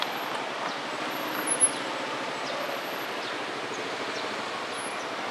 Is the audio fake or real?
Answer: real